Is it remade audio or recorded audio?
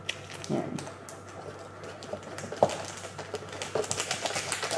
recorded